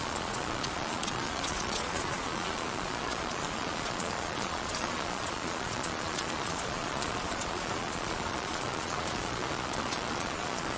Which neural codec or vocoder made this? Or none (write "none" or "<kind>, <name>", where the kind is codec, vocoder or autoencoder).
vocoder, Vocos